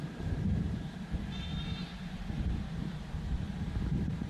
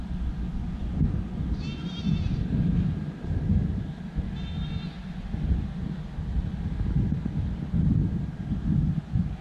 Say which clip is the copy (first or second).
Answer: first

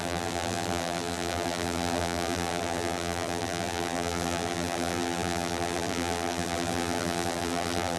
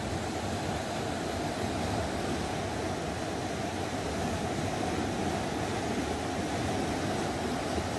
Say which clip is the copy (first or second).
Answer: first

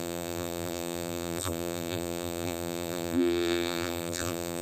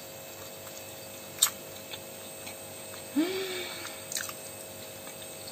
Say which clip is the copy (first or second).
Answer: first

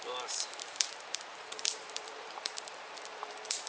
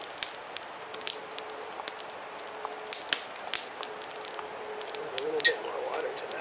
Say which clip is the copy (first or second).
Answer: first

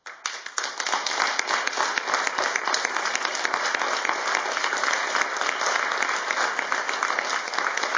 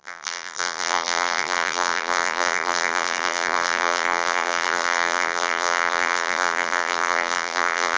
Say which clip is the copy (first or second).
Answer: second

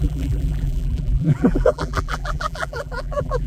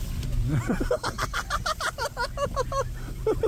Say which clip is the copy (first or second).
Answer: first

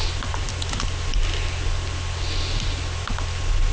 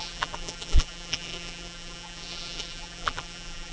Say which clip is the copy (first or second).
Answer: second